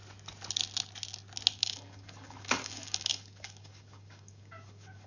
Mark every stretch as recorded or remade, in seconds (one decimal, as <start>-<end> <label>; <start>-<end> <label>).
0.0-1.6 recorded; 1.6-5.1 remade